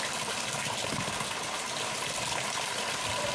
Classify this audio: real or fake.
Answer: real